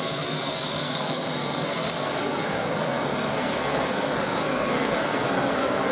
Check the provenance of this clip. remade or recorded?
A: remade